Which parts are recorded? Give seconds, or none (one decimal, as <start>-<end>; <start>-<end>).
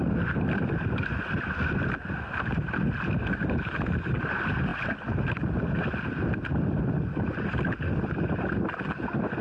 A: 0.0-9.4